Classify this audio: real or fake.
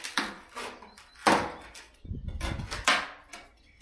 real